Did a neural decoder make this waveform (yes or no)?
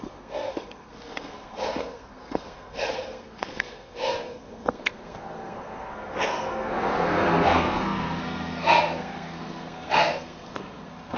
yes